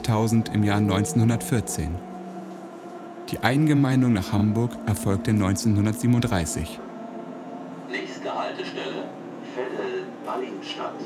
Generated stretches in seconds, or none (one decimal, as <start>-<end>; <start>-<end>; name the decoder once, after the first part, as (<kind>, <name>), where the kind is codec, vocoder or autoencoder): 0.0-4.4 (vocoder, Vocos); 6.2-11.1